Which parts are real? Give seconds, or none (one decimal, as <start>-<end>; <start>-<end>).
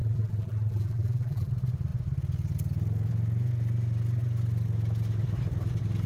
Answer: 1.5-6.1